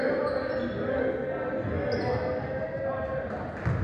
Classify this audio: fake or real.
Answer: real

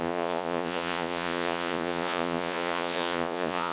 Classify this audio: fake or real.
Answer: fake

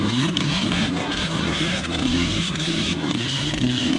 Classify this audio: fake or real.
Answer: fake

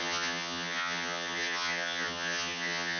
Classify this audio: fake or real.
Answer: fake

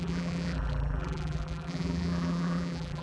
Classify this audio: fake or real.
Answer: fake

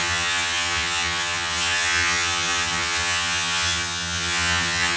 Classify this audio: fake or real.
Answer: fake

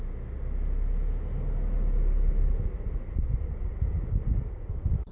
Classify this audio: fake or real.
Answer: real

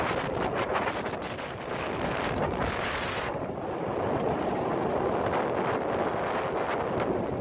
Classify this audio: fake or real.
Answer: real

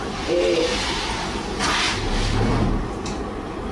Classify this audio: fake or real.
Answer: real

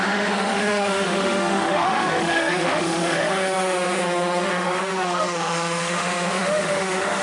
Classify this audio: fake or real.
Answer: fake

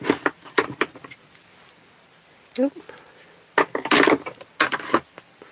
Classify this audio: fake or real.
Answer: real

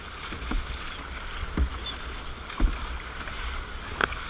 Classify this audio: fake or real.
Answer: real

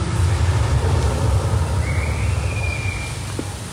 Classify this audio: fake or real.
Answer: real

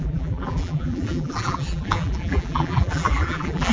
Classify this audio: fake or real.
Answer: fake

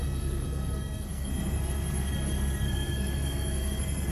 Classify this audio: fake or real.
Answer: fake